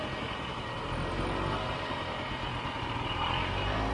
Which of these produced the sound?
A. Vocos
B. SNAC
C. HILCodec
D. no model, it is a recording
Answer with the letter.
D